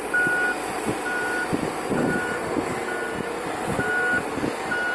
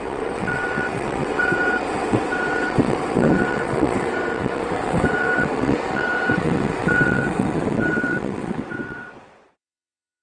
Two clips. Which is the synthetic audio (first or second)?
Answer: second